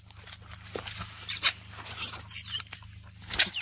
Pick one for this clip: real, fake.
real